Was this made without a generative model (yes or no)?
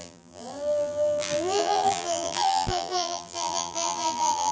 no